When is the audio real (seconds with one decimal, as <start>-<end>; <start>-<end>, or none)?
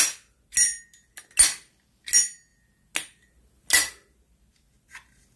0.0-5.4